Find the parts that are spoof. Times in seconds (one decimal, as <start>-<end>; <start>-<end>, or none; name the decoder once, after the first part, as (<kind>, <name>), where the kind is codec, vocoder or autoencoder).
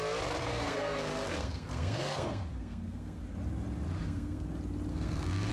0.4-3.2 (codec, SNAC); 4.0-4.5; 4.9-5.5